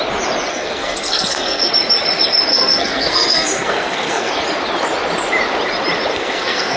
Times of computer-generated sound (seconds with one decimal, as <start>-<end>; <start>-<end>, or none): 0.5-1.7; 2.5-4.3; 6.1-6.8